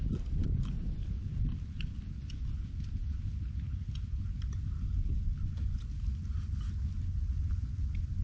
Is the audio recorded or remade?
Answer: recorded